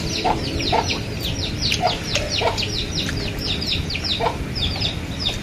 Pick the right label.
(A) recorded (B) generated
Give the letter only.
A